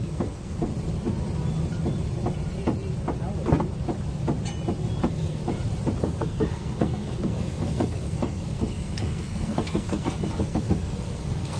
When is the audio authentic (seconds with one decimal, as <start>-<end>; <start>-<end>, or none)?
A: 0.7-5.0; 5.4-6.0

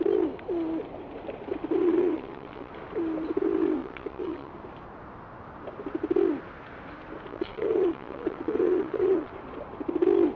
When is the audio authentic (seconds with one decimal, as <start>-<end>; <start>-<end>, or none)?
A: 0.0-1.8; 2.7-3.8; 4.5-7.3; 9.3-10.4

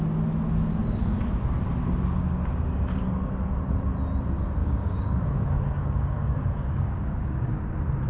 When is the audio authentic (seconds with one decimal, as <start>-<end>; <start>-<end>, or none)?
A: 0.0-4.6; 7.6-8.1

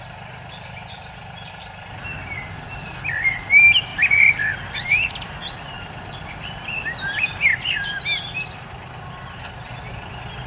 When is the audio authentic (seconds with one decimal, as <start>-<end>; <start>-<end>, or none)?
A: 0.0-3.9; 5.1-10.5

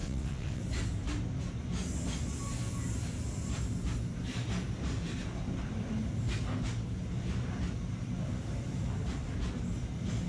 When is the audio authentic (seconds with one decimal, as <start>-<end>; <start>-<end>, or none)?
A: 0.6-10.3

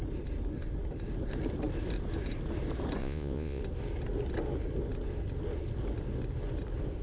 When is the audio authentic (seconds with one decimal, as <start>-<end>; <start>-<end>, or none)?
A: 0.0-3.0; 3.6-7.0